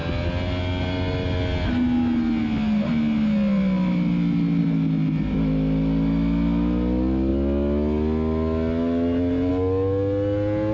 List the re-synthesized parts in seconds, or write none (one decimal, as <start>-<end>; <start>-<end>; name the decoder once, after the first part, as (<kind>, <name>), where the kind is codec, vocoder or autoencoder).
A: none